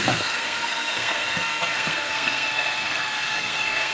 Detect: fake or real fake